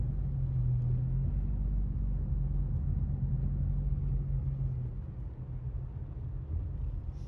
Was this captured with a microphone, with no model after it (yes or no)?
yes